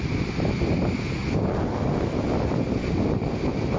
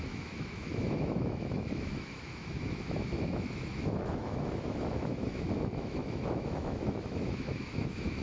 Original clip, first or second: first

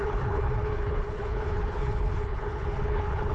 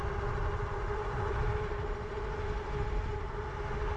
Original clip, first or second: second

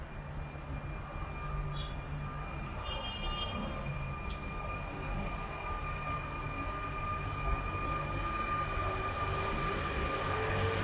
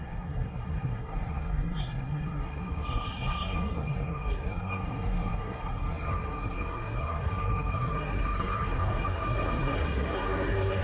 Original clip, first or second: first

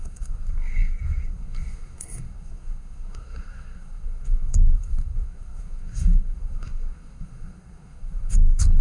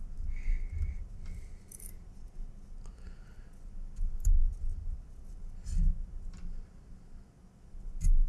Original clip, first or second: second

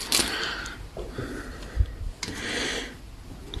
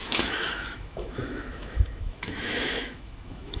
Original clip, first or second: first